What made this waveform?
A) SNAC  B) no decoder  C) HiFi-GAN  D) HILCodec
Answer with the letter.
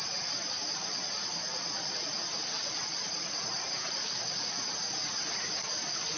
B